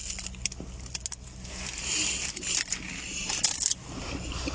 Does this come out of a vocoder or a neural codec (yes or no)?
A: no